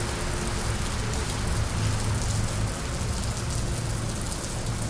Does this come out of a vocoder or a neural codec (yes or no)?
no